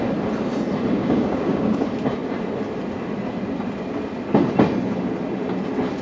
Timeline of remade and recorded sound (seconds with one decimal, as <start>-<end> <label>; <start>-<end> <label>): 0.0-0.9 recorded; 0.9-1.8 remade; 1.8-6.0 recorded